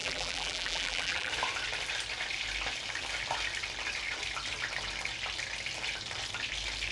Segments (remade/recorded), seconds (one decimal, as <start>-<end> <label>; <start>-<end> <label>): 0.0-1.3 remade; 1.3-6.9 recorded